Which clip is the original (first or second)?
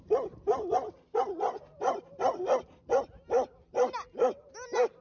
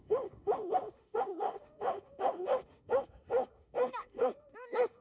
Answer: first